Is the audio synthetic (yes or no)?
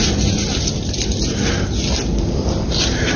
no